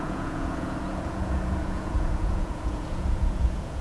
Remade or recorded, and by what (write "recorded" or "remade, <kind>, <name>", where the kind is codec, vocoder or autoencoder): remade, vocoder, Vocos